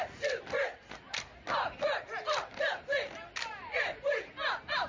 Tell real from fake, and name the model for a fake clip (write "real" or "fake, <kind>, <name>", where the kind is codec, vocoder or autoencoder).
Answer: real